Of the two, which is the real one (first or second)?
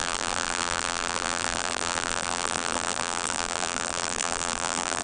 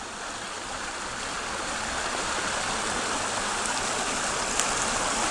second